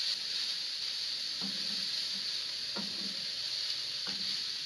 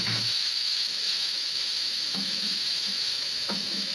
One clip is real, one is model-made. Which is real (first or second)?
first